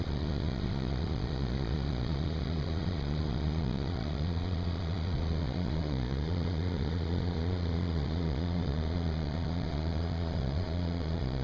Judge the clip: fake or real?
fake